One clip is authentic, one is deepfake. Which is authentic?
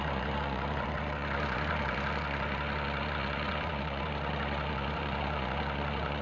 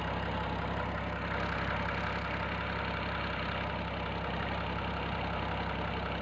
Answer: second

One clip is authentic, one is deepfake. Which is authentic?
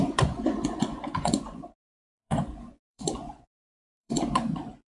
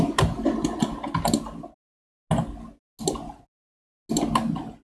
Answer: second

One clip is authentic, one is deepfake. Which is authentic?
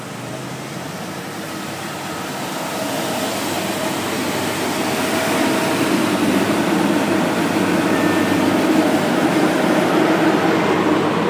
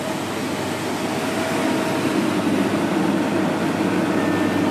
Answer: second